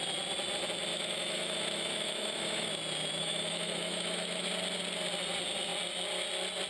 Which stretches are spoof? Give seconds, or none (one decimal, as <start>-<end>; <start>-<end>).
0.9-2.7; 3.2-4.5